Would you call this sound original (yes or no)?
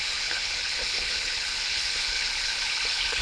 no